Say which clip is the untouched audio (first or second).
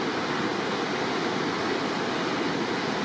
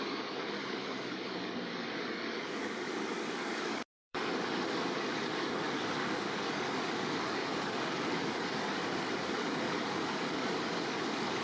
first